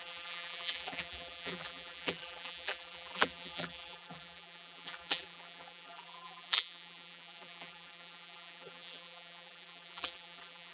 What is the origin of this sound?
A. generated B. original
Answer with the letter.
A